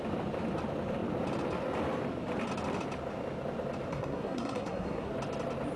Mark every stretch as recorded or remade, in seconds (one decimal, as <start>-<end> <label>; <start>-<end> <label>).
0.0-3.9 recorded; 3.9-5.1 remade; 5.1-5.8 recorded

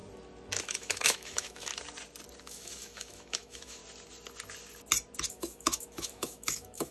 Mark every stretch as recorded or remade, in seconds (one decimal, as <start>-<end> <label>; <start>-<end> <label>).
0.0-0.6 recorded; 0.6-1.7 remade; 1.7-2.4 recorded; 2.4-3.8 remade; 3.8-5.3 recorded; 5.3-6.9 remade

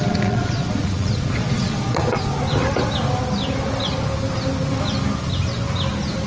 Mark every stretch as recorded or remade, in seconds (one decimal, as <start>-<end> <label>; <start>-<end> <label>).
0.0-2.3 remade; 2.3-6.3 recorded

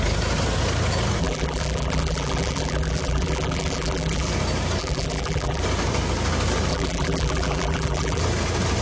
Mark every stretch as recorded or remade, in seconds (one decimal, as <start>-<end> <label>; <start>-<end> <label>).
0.0-1.2 recorded; 1.2-4.3 remade; 4.3-4.8 recorded; 4.8-5.6 remade; 5.6-6.7 recorded; 6.7-8.2 remade; 8.2-8.8 recorded

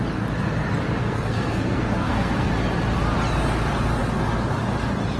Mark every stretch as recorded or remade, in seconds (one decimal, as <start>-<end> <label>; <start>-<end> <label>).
0.0-1.0 recorded; 1.0-2.5 remade; 2.5-5.2 recorded

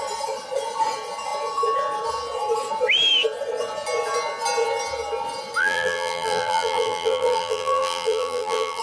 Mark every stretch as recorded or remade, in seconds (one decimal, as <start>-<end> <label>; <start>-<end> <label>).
0.0-5.6 recorded; 5.6-8.8 remade

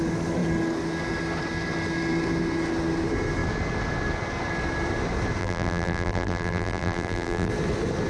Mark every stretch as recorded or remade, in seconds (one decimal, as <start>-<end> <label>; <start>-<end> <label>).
0.0-5.4 recorded; 5.4-7.5 remade; 7.5-8.1 recorded

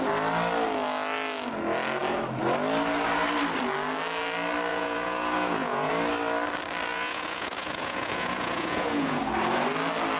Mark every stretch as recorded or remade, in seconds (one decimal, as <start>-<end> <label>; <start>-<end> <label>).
0.0-4.7 recorded; 4.7-5.9 remade; 5.9-6.9 recorded; 6.9-9.2 remade; 9.2-10.2 recorded